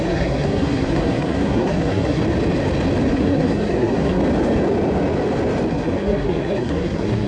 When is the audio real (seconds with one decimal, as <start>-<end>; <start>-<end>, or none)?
2.2-3.1; 4.2-5.7